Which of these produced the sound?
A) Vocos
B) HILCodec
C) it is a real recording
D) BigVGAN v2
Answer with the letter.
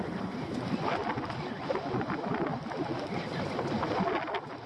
C